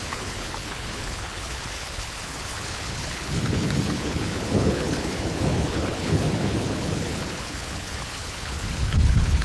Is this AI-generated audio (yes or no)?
yes